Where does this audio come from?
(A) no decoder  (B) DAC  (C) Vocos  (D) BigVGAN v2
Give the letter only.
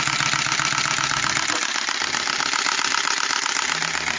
A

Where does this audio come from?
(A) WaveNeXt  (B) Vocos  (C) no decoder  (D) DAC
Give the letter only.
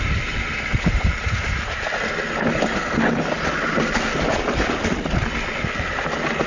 C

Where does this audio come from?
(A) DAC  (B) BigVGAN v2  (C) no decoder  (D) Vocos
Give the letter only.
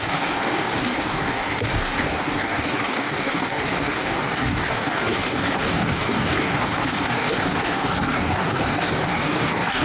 A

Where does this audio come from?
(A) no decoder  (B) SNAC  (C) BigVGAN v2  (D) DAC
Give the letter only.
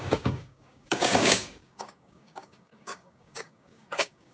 D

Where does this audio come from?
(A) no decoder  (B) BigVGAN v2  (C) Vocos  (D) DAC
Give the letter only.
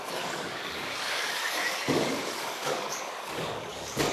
D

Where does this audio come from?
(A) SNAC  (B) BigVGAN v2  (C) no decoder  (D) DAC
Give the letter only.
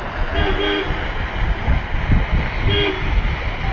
C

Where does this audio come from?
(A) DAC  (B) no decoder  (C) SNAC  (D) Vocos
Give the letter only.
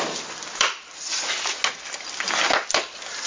B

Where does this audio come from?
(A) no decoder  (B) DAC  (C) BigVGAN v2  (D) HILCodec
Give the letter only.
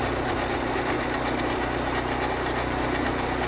A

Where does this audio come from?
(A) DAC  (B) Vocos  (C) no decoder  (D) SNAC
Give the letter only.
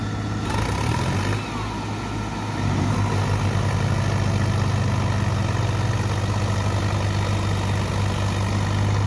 C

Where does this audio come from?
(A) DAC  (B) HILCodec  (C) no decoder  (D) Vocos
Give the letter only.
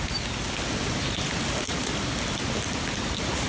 C